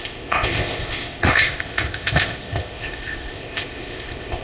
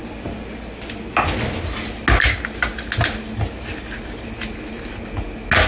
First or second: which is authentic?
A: second